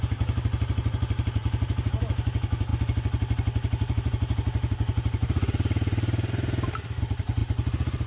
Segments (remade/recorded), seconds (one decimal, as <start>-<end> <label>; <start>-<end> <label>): 0.0-8.1 recorded